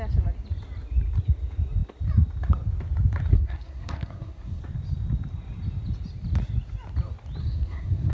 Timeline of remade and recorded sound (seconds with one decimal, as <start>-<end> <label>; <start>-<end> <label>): 0.0-3.3 recorded; 3.3-4.6 remade; 4.6-7.4 recorded; 7.4-8.1 remade

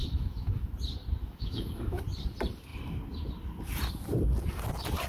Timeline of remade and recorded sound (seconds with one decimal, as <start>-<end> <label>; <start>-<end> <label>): 0.0-0.7 remade; 0.7-1.2 recorded; 1.2-2.0 remade; 2.0-5.1 recorded

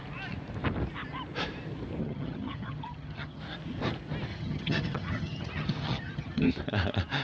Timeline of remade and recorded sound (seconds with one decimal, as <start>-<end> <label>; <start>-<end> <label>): 0.0-2.0 recorded; 2.0-3.4 remade; 3.4-4.3 recorded; 4.3-6.5 remade; 6.5-7.2 recorded

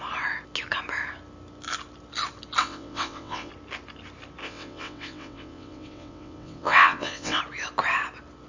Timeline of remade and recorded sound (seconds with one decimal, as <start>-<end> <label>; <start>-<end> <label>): 0.0-2.6 recorded; 2.6-3.5 remade; 3.5-4.4 recorded; 4.4-7.4 remade; 7.4-8.5 recorded

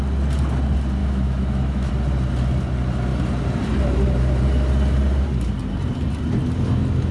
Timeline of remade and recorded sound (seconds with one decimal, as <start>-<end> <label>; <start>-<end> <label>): 0.0-1.0 recorded; 1.0-1.9 remade; 1.9-7.1 recorded

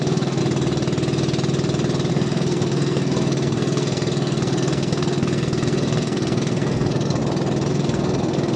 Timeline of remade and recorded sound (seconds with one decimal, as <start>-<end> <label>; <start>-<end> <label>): 0.0-0.4 remade; 0.4-2.1 recorded; 2.1-7.2 remade; 7.2-7.7 recorded; 7.7-8.6 remade

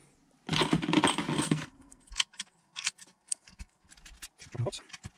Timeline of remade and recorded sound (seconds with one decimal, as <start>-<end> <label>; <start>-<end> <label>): 0.0-1.3 recorded; 1.3-3.9 remade; 3.9-5.2 recorded